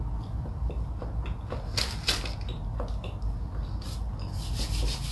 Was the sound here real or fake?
real